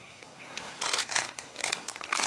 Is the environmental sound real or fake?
fake